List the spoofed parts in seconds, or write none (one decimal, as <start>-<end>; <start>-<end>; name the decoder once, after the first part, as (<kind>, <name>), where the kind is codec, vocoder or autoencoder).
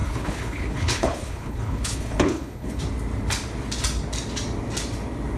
0.0-2.8 (codec, HILCodec)